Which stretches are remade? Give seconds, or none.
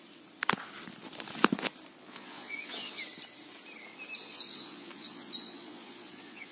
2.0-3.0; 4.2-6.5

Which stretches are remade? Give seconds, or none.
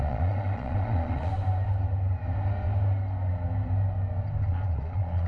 0.0-1.3; 4.5-5.3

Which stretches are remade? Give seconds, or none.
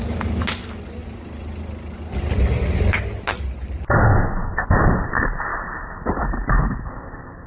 4.1-4.7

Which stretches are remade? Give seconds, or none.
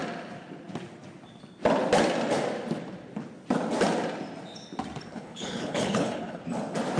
5.1-6.4